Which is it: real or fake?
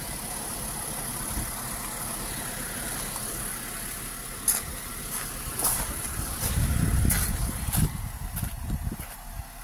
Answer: real